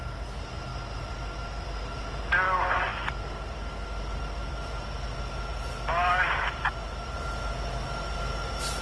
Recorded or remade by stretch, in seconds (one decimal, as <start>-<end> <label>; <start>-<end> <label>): 0.0-8.8 recorded